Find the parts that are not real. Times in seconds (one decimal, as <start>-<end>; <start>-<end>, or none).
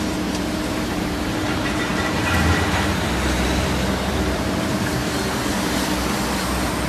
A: 0.0-5.5